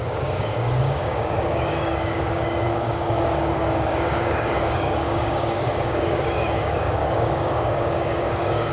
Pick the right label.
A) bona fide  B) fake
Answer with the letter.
B